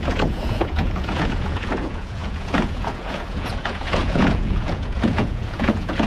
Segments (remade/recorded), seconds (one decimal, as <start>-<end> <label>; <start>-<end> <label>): 0.0-6.1 remade